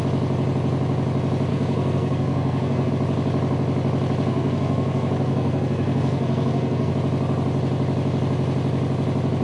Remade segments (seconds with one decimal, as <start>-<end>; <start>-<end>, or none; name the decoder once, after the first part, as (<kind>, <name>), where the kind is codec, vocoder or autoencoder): 1.5-2.9 (codec, SNAC); 4.3-6.9